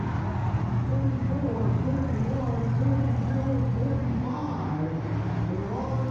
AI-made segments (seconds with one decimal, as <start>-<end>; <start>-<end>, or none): none